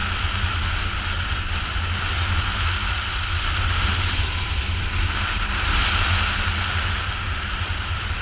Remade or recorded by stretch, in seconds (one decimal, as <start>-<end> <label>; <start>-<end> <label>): 0.0-3.8 recorded; 3.8-5.8 remade; 5.8-7.1 recorded; 7.1-8.2 remade